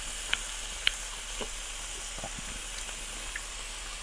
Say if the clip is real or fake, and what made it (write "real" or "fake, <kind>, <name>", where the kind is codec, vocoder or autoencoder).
real